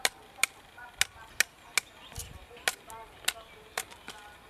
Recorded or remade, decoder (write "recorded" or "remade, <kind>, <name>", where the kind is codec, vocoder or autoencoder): recorded